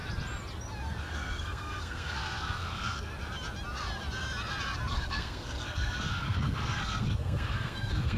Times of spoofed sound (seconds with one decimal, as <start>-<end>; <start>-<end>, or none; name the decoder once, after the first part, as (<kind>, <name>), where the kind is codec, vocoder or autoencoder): 1.0-3.1 (codec, SNAC); 4.9-8.2